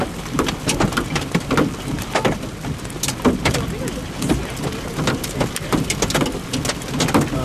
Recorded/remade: recorded